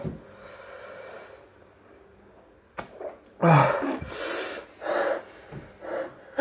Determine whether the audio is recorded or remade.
recorded